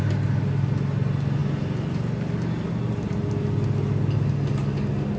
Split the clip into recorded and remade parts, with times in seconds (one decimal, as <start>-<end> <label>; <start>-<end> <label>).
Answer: 0.0-5.2 recorded